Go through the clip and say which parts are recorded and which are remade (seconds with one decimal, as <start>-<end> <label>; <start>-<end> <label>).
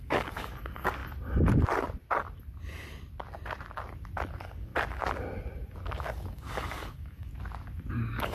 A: 0.0-1.0 remade; 1.0-4.3 recorded; 4.3-4.7 remade; 4.7-6.0 recorded; 6.0-7.3 remade; 7.3-7.9 recorded; 7.9-8.3 remade